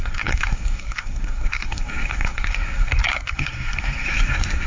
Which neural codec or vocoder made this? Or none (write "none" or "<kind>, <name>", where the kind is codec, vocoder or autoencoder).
codec, SNAC